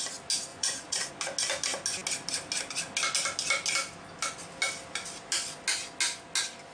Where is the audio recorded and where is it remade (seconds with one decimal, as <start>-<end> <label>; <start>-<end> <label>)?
0.0-0.5 recorded; 0.5-1.1 remade; 1.1-6.7 recorded